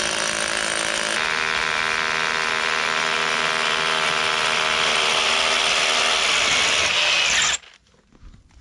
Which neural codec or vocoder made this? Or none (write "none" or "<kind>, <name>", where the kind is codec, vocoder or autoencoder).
none